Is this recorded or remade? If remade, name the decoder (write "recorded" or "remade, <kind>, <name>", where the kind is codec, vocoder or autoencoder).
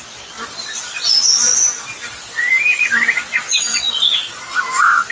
recorded